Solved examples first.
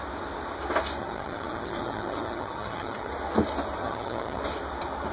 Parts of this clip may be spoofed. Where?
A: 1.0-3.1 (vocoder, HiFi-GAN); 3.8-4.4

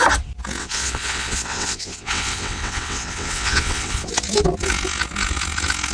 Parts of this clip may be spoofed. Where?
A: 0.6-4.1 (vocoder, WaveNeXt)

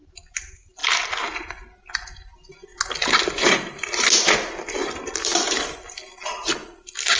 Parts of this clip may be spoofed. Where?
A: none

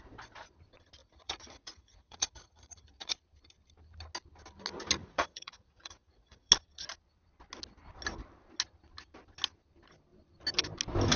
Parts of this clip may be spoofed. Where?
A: 1.0-3.1 (vocoder, Vocos); 5.0-6.5

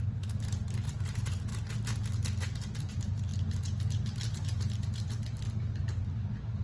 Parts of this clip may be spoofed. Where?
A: 0.0-1.5 (vocoder, BigVGAN v2); 2.9-3.3

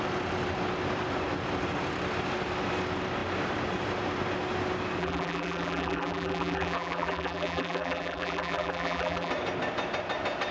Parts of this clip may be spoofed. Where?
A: 5.0-9.3 (vocoder, BigVGAN v2)